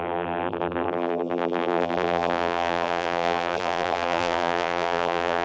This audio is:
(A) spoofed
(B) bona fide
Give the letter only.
A